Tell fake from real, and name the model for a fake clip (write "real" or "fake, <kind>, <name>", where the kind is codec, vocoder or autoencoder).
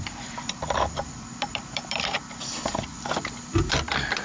fake, vocoder, BigVGAN v2